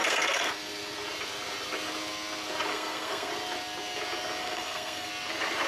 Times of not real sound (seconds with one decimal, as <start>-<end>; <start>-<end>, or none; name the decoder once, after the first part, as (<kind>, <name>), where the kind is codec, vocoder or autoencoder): 0.0-0.5 (codec, SNAC); 2.7-3.3; 4.4-5.1